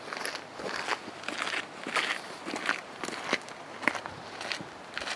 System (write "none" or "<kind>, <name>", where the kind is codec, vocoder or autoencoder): none